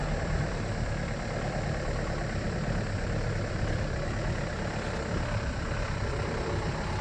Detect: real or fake fake